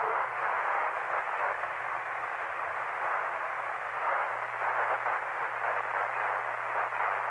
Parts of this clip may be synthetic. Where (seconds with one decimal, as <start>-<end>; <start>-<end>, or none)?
0.0-4.3; 5.1-5.5